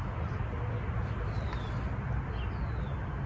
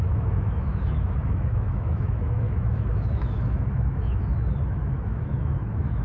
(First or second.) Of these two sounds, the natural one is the first